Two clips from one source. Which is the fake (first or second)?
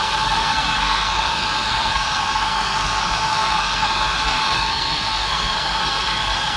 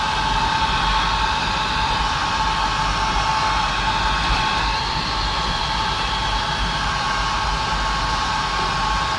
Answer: first